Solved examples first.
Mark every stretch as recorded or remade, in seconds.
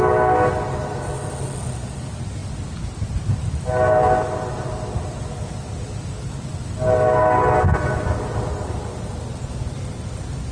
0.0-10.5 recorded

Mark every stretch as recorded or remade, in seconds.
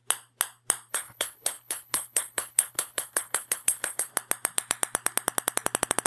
0.0-0.9 recorded; 0.9-4.1 remade; 4.1-6.1 recorded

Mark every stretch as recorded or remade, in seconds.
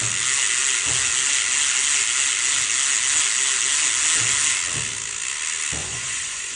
0.0-5.8 recorded; 5.8-6.6 remade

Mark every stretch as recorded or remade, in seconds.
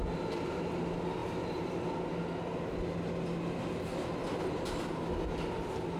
0.0-6.0 recorded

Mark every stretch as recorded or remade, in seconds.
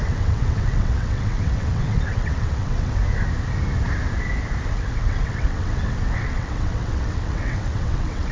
0.0-3.0 remade; 3.0-4.7 recorded; 4.7-8.3 remade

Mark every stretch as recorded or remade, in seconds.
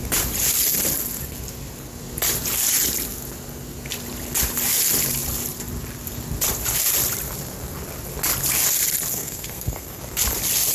0.0-9.1 recorded; 9.1-10.0 remade; 10.0-10.7 recorded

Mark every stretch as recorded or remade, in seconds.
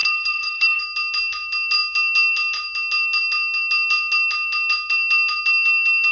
0.0-0.8 remade; 0.8-6.1 recorded